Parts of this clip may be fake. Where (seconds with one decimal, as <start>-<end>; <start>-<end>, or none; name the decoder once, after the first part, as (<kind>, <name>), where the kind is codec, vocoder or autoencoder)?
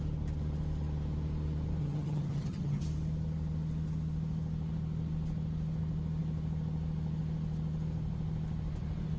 1.8-2.8 (vocoder, HiFi-GAN)